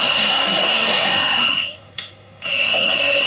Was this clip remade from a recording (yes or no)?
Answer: yes